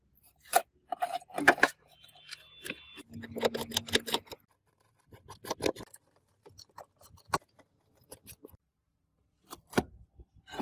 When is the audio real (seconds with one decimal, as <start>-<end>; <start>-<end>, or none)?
0.6-4.7